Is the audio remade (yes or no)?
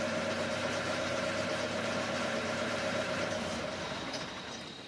yes